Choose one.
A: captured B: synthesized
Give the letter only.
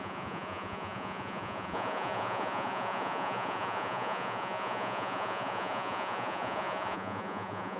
B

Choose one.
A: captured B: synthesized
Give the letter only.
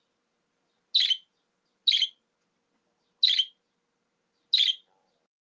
A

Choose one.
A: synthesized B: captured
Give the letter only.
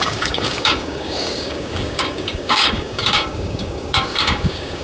A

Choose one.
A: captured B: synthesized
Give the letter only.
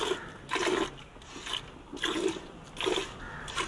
A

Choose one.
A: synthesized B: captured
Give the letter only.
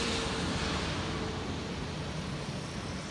B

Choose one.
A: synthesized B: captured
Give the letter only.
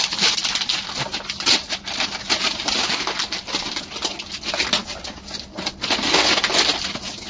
B